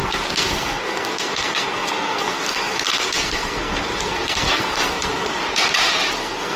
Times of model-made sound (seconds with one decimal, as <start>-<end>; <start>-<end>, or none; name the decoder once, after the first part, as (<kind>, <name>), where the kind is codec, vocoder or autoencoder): 0.0-5.4 (codec, SNAC); 6.1-6.6